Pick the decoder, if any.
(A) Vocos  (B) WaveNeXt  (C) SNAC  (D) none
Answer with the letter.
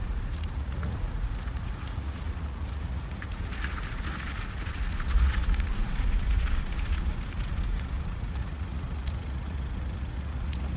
A